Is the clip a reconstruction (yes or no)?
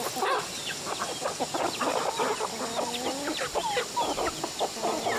no